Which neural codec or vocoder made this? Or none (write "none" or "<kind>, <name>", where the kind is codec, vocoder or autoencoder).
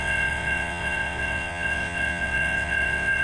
vocoder, WaveNeXt